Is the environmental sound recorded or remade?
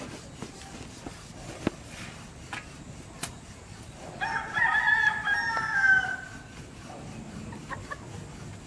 recorded